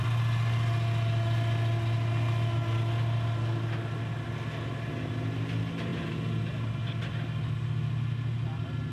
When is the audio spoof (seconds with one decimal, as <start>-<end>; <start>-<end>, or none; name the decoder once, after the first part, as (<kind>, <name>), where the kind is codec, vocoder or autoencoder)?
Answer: none